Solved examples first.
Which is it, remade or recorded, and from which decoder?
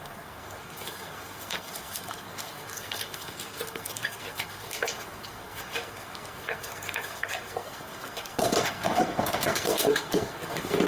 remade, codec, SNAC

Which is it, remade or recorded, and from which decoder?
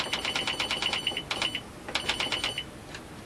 recorded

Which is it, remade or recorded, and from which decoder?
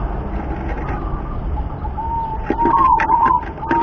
recorded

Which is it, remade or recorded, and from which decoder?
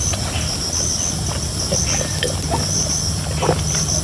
recorded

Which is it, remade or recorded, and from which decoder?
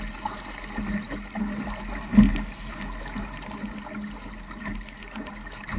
recorded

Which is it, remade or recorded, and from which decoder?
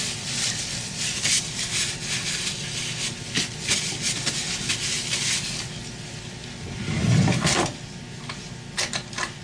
recorded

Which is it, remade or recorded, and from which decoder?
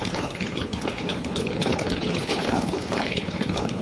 remade, codec, HILCodec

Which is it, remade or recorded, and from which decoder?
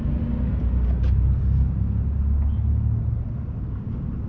recorded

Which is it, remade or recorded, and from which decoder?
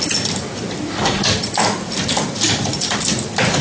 recorded